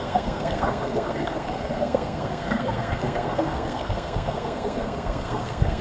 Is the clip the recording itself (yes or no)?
no